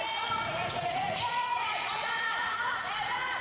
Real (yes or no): no